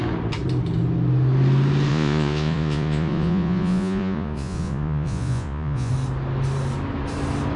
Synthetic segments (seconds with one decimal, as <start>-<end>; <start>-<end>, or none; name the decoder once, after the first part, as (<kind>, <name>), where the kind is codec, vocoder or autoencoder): 1.9-5.9 (vocoder, Vocos)